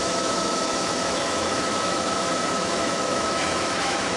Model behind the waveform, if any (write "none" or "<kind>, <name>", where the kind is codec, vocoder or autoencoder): autoencoder, DAC-VAE